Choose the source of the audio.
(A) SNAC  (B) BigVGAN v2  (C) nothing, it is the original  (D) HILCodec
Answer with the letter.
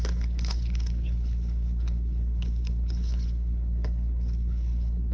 D